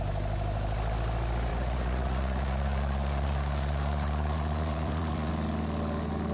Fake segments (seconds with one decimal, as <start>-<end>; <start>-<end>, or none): 1.5-5.3